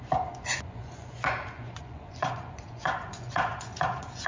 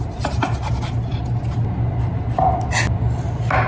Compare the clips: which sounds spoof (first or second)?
first